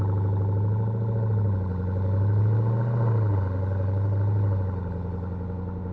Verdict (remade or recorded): recorded